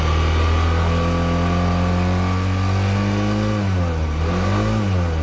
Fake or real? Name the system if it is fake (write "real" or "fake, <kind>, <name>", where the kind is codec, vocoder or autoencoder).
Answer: real